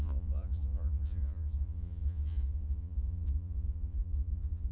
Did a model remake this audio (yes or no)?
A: yes